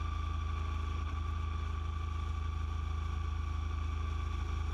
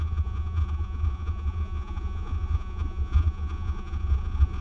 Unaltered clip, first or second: first